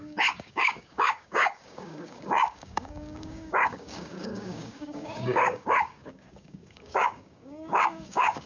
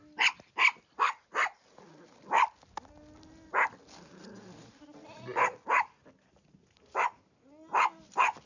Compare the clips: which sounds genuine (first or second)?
second